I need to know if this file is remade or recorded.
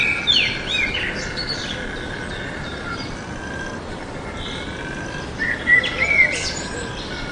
recorded